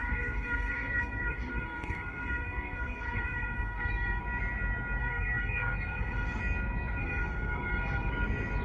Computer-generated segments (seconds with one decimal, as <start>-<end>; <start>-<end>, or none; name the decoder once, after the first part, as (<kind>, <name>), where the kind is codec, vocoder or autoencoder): 0.0-4.2 (codec, SNAC); 5.0-6.4; 7.0-8.1